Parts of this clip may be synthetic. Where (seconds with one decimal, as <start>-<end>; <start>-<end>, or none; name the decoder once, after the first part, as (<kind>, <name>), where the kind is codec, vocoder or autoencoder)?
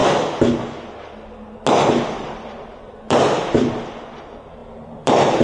2.1-5.4 (vocoder, BigVGAN v2)